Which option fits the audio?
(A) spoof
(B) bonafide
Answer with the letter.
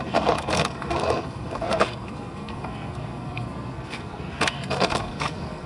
A